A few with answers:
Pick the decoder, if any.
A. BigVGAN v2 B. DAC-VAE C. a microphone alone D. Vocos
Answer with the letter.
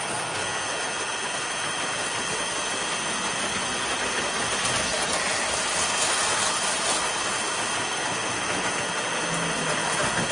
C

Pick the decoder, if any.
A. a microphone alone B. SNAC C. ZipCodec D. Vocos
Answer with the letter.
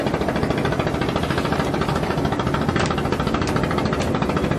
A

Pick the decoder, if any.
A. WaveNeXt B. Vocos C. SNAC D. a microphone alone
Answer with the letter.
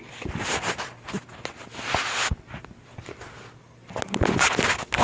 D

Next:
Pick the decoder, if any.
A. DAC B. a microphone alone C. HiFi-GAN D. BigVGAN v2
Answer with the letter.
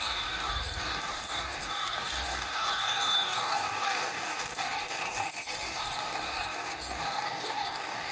A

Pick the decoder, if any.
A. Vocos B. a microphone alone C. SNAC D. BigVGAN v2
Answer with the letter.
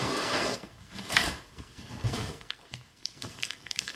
C